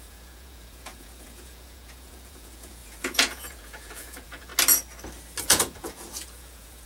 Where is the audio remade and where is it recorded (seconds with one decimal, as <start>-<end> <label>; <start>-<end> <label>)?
0.0-4.5 remade; 4.5-5.4 recorded; 5.4-6.9 remade